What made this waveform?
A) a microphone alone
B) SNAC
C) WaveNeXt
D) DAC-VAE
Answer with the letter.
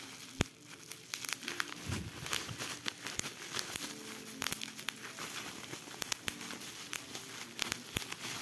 A